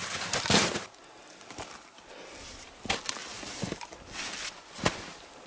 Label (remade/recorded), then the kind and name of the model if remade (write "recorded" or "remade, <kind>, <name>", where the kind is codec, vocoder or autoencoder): recorded